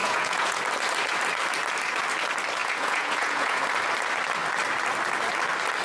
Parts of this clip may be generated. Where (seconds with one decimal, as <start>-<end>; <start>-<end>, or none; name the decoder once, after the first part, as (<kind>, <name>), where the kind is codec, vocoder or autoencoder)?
0.0-0.6 (vocoder, Vocos); 2.6-3.6